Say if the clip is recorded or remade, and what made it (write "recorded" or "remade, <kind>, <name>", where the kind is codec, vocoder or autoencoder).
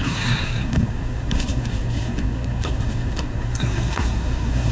remade, codec, SNAC